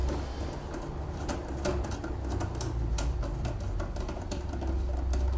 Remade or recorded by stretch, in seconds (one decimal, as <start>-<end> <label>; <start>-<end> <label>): 0.0-5.4 recorded